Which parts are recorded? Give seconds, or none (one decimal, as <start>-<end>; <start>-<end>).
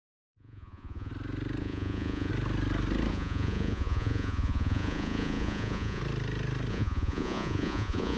1.1-1.6; 2.3-3.1; 6.0-6.7